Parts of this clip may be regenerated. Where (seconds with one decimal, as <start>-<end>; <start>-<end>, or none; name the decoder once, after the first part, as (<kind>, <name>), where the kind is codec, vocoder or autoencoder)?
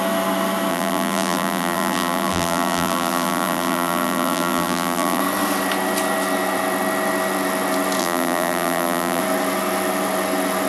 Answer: 0.7-5.2 (vocoder, BigVGAN v2); 8.0-9.2